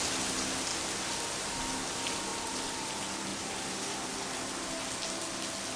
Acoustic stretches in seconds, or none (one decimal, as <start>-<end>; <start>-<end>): 0.0-2.3; 2.9-3.3; 4.1-5.8